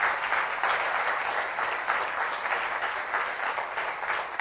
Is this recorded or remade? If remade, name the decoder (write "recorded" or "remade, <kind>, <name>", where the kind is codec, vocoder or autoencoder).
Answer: recorded